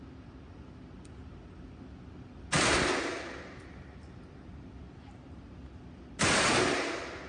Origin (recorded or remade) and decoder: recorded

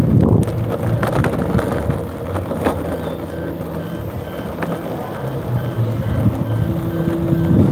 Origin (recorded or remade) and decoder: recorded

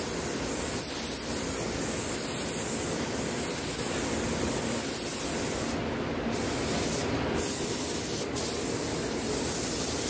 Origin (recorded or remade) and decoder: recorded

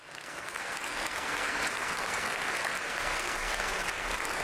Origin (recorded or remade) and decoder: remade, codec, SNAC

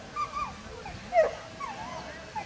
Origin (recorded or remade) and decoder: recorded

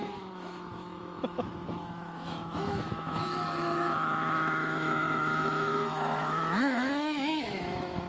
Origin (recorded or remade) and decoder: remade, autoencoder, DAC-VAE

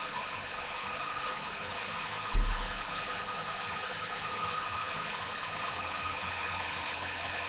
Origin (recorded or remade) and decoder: remade, codec, HILCodec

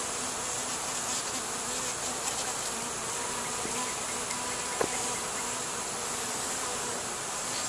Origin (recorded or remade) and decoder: recorded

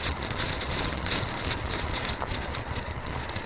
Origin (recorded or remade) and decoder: remade, vocoder, Vocos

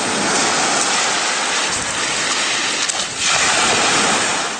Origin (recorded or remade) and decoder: recorded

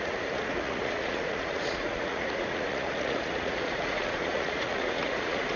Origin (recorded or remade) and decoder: remade, vocoder, Vocos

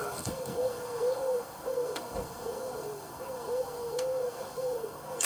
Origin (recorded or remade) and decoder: remade, codec, SNAC